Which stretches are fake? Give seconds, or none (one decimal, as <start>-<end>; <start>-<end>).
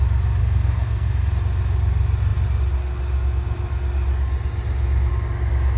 0.4-1.3